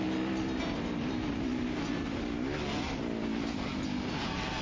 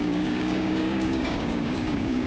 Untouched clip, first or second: first